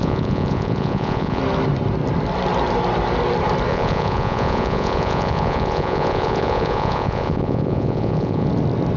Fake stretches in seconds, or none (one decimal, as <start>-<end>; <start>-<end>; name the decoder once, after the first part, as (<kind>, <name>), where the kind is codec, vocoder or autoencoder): 0.0-1.4 (vocoder, Vocos); 3.7-8.5